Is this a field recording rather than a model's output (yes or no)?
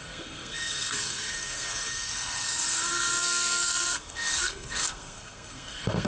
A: no